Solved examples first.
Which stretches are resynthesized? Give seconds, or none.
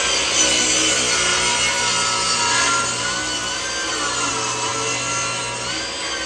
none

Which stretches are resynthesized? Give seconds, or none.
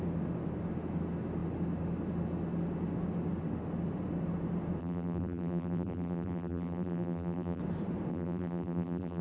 4.8-7.6; 8.1-9.2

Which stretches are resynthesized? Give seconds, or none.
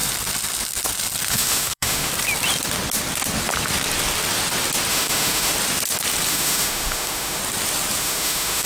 1.3-2.1; 4.9-5.5; 6.3-7.4; 8.0-8.7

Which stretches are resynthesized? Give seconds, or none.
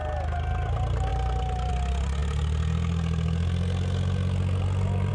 none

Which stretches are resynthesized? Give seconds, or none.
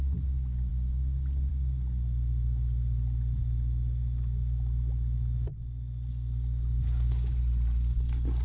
6.1-7.4